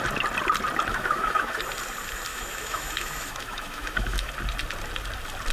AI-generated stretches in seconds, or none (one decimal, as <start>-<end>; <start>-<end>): 0.9-1.6; 2.3-4.3